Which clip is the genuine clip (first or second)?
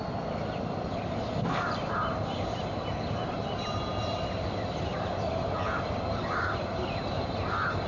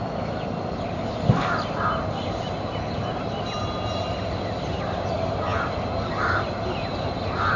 second